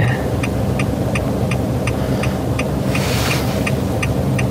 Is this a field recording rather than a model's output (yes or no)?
no